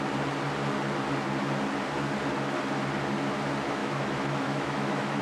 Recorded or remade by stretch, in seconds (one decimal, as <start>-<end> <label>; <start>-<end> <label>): 0.0-3.8 recorded; 3.8-5.2 remade